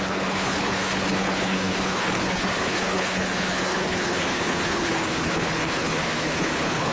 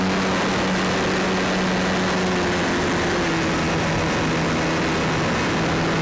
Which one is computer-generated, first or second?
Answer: first